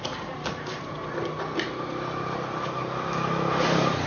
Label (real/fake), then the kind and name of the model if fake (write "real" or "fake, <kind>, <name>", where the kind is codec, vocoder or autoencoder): real